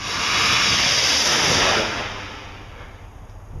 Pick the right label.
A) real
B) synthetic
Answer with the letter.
A